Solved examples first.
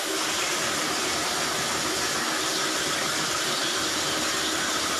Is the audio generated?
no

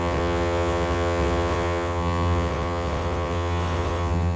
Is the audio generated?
yes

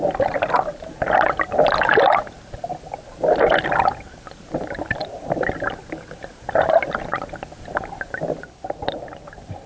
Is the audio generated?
no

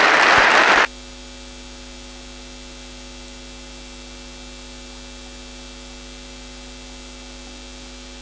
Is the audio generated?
no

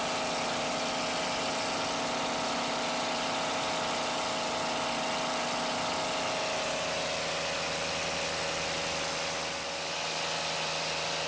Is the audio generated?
no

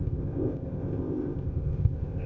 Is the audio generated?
yes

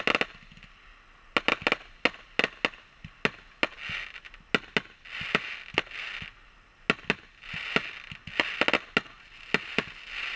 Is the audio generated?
no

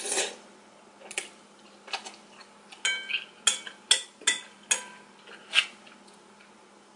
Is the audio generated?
no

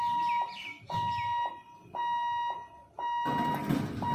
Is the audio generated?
no